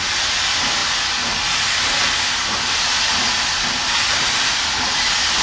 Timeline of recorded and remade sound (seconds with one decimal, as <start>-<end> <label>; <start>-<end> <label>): 0.0-5.4 recorded